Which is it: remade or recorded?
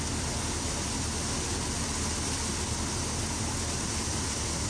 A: recorded